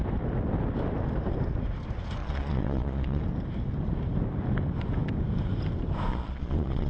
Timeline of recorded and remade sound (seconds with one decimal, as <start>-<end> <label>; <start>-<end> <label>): 0.0-2.2 recorded; 2.2-3.2 remade; 3.2-6.1 recorded; 6.1-6.9 remade